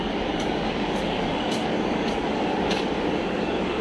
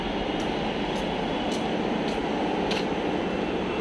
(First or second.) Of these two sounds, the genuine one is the second